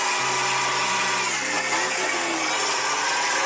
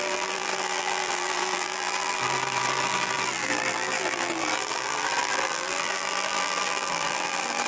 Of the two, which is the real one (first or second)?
first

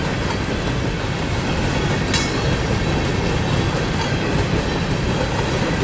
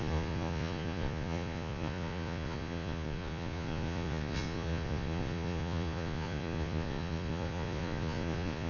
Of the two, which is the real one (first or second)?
first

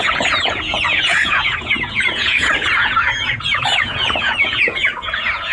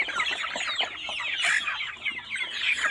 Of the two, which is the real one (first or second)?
second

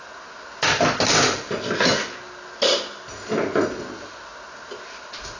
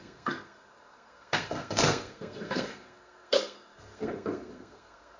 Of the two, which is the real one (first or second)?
first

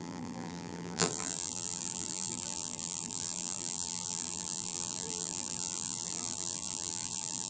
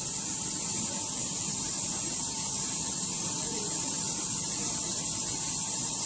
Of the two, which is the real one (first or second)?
second